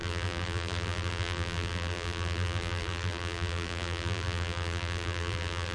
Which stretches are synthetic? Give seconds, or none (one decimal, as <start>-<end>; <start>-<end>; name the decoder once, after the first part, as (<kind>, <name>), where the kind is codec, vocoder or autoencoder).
0.0-5.7 (vocoder, BigVGAN v2)